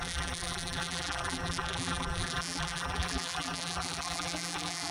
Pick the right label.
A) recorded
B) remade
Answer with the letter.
B